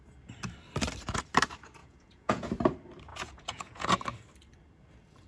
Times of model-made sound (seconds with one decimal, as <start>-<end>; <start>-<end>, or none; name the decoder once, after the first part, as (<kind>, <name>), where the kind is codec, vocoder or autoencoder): 1.8-2.5 (vocoder, Vocos); 3.1-4.0